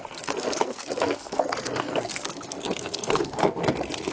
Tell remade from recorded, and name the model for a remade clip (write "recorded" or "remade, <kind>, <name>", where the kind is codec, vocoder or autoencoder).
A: remade, codec, SNAC